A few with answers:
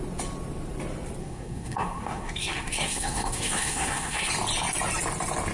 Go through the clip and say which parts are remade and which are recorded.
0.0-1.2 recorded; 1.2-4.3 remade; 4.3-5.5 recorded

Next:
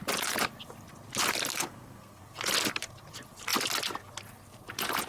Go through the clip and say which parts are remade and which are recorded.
0.0-1.5 recorded; 1.5-2.2 remade; 2.2-5.1 recorded

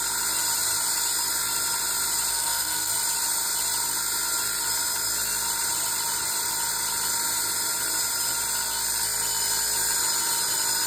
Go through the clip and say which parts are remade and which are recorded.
0.0-2.3 recorded; 2.3-2.9 remade; 2.9-10.9 recorded

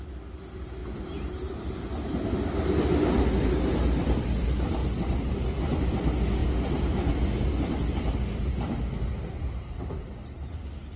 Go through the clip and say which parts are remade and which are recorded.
0.0-11.0 recorded

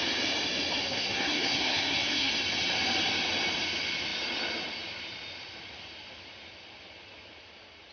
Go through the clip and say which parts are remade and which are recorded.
0.0-0.8 recorded; 0.8-2.3 remade; 2.3-7.9 recorded